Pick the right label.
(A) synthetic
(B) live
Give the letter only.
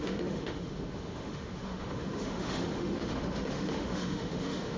A